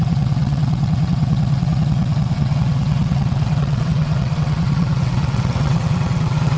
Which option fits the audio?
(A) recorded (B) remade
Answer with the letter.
B